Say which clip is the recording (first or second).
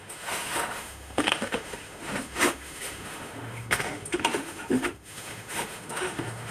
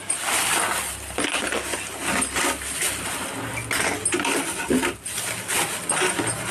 second